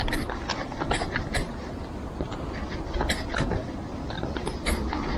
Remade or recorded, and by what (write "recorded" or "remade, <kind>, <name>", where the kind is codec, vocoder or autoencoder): recorded